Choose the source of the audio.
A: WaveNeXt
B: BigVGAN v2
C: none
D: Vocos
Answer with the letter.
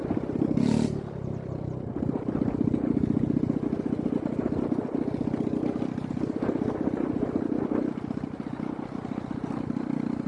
C